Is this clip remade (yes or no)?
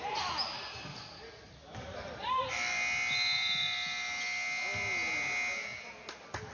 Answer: no